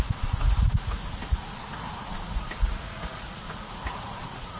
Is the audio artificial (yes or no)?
yes